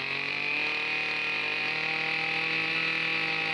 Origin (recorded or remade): recorded